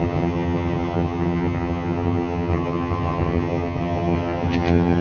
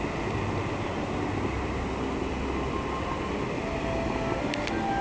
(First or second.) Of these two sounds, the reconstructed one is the first